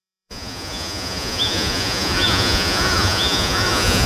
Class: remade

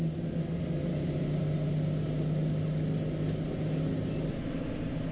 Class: recorded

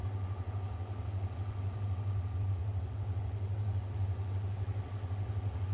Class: remade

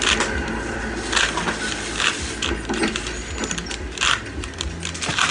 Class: recorded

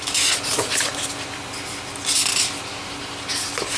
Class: recorded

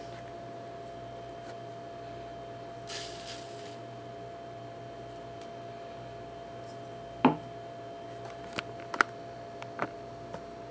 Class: recorded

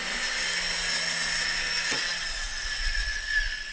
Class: recorded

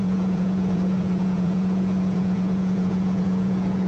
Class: remade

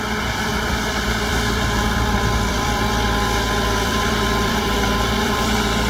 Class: remade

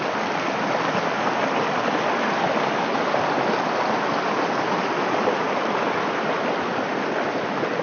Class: recorded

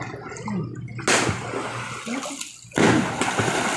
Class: recorded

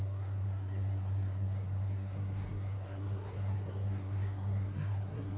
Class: remade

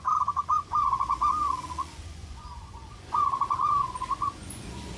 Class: remade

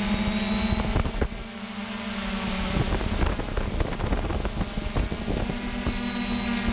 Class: recorded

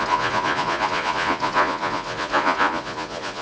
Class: remade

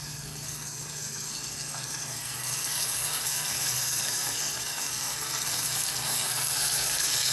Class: remade